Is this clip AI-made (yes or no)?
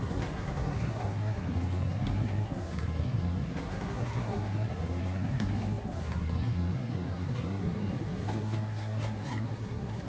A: yes